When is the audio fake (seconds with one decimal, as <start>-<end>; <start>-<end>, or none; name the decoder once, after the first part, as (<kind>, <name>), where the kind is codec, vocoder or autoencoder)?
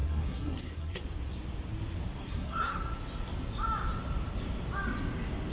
0.0-1.0 (codec, SNAC); 2.2-2.8